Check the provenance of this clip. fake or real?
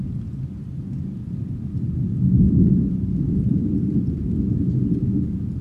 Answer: real